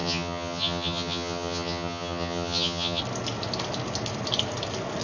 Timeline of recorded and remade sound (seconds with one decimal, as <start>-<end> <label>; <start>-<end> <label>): 0.0-3.0 remade; 3.0-5.0 recorded